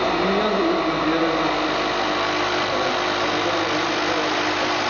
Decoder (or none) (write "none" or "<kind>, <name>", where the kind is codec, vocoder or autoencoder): none